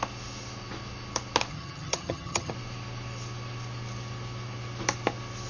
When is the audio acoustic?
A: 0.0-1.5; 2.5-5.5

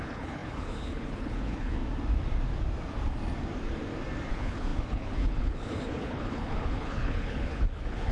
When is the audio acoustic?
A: 1.8-4.3